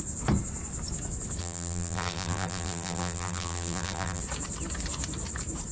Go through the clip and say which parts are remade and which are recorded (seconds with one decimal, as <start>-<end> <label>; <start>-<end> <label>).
0.0-1.4 recorded; 1.4-4.2 remade; 4.2-5.7 recorded